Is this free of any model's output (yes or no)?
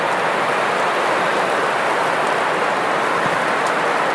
yes